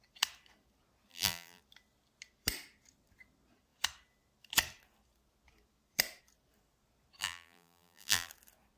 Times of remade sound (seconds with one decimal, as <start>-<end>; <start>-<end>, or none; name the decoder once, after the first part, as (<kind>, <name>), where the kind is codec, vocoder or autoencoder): 1.1-1.6 (vocoder, BigVGAN v2); 7.2-8.3